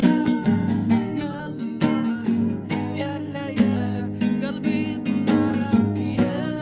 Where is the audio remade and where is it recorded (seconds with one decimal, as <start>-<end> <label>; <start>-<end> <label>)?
0.0-4.0 remade; 4.0-5.5 recorded; 5.5-6.6 remade